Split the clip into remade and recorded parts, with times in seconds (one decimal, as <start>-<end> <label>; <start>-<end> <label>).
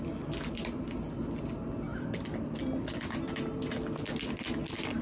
0.0-5.0 recorded